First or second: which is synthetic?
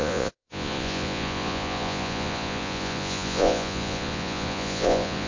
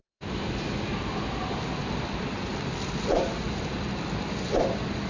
first